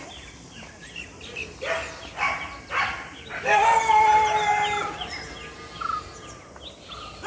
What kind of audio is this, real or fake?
real